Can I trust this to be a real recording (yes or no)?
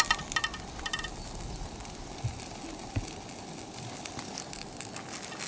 yes